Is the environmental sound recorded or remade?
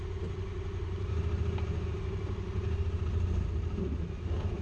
recorded